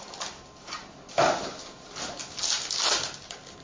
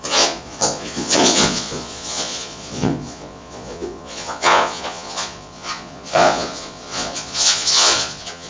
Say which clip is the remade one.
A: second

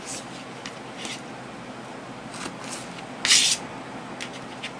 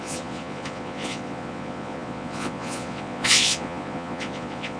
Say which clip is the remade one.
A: second